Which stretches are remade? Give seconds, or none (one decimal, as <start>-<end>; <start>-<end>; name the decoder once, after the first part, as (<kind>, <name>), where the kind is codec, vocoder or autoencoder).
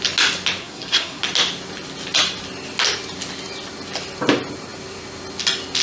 0.6-1.2 (codec, SNAC)